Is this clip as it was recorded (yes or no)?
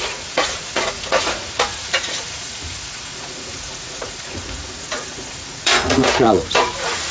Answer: no